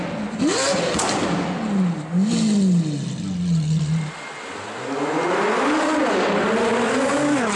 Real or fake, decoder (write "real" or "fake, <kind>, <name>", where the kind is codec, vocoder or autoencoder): real